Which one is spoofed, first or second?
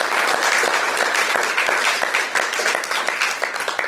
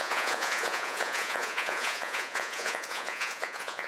second